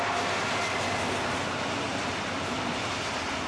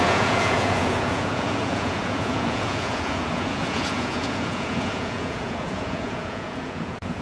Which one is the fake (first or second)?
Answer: second